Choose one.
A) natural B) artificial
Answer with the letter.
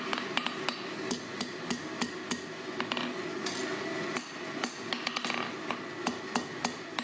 A